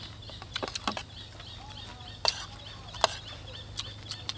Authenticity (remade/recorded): recorded